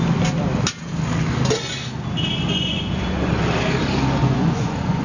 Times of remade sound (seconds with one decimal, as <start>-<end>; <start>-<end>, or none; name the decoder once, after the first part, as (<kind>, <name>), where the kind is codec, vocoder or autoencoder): 2.5-3.3 (vocoder, Vocos); 4.2-5.0